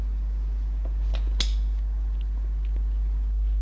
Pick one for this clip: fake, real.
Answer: real